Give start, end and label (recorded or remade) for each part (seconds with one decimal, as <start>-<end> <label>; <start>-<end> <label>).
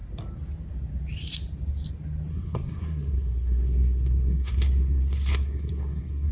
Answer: 0.0-2.3 recorded; 2.3-6.3 remade